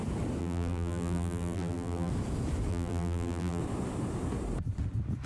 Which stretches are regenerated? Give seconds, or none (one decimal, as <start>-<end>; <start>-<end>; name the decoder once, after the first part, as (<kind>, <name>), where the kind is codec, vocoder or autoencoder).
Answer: 0.4-2.1 (vocoder, BigVGAN v2); 2.7-3.6